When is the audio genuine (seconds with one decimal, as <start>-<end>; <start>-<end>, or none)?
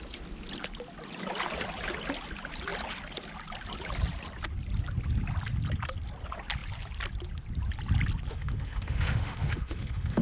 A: 0.0-8.3